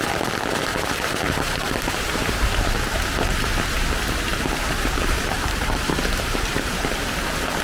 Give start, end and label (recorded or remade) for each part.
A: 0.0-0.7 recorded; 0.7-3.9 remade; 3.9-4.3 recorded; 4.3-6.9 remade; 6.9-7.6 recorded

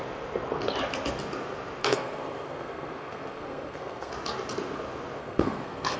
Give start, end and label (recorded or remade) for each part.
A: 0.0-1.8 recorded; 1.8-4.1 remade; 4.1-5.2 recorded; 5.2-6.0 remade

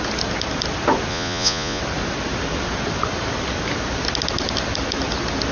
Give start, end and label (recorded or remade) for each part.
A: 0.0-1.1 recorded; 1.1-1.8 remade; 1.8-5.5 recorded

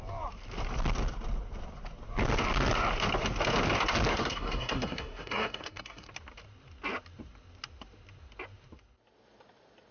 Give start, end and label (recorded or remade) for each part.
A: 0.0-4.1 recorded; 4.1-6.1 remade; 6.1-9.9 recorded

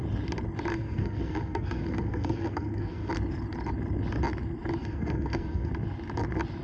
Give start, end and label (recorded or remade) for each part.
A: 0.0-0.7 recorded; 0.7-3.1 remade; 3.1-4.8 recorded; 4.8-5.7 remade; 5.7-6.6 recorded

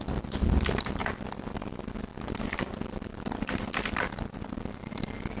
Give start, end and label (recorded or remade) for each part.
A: 0.0-2.1 recorded; 2.1-4.4 remade; 4.4-5.4 recorded